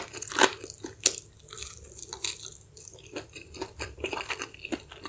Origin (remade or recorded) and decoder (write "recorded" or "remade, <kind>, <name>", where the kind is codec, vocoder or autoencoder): recorded